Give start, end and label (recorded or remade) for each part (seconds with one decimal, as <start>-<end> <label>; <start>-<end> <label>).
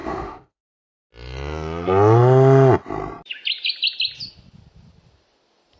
0.0-0.6 remade; 0.6-5.8 recorded